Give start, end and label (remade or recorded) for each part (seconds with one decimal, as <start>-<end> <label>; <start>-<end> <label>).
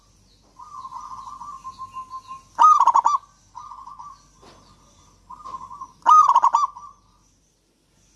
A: 0.0-8.2 recorded